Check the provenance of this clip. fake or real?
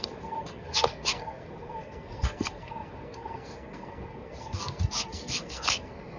fake